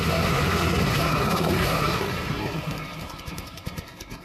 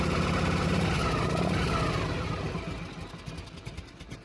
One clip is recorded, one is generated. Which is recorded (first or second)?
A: second